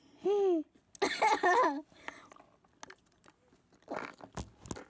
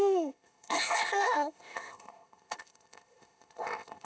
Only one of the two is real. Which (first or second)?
first